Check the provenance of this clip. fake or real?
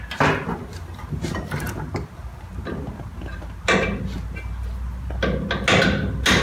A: real